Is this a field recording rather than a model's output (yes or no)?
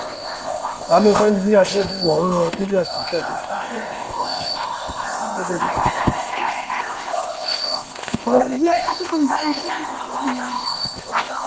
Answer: no